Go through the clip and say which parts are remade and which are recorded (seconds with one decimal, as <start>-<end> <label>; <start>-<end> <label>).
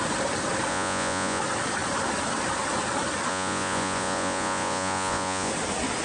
0.0-0.7 recorded; 0.7-1.4 remade; 1.4-3.3 recorded; 3.3-5.5 remade; 5.5-6.0 recorded